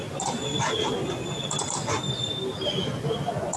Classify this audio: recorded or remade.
recorded